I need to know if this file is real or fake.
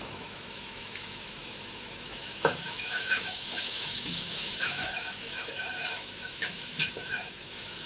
fake